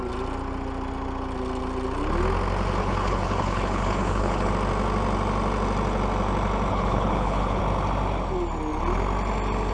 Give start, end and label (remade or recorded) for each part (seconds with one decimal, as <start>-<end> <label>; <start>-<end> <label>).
0.0-2.8 recorded; 2.8-4.5 remade; 4.5-6.7 recorded; 6.7-7.6 remade; 7.6-9.7 recorded